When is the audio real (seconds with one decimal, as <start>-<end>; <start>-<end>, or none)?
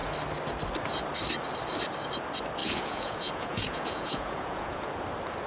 0.0-2.6; 4.9-5.5